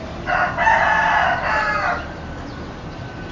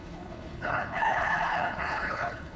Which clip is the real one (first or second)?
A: first